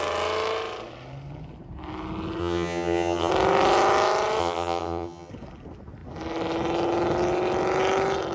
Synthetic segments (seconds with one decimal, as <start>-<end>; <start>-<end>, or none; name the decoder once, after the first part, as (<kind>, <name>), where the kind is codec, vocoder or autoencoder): 2.4-3.3 (vocoder, HiFi-GAN); 4.4-5.3